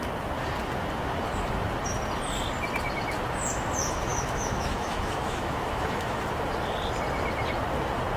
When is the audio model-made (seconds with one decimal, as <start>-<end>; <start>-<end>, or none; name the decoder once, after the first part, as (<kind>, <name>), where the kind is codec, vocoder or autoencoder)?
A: 4.1-6.3 (autoencoder, DAC-VAE)